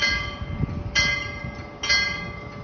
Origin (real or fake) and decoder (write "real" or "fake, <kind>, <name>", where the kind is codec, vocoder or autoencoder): real